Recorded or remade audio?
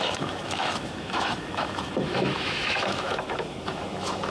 remade